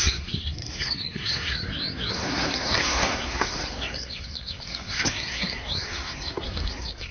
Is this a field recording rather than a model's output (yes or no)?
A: no